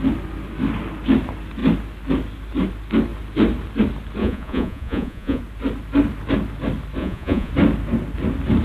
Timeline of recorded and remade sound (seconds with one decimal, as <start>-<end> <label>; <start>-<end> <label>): 0.0-4.2 recorded; 4.2-5.4 remade; 5.4-7.0 recorded; 7.0-7.5 remade; 7.5-8.6 recorded